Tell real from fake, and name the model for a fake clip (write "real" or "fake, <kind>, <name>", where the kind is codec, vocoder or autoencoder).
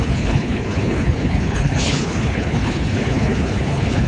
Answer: fake, codec, HILCodec